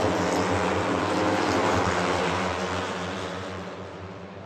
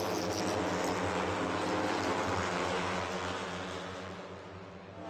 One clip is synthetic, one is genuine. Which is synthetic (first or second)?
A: first